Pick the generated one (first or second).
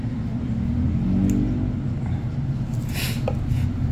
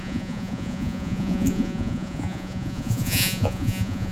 second